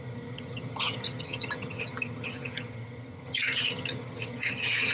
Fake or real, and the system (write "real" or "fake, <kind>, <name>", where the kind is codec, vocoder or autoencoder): fake, vocoder, HiFi-GAN